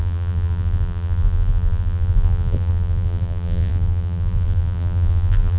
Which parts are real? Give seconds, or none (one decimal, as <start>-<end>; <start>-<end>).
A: none